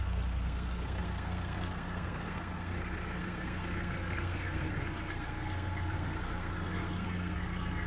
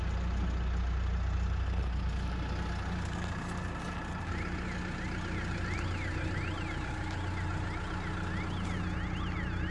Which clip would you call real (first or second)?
second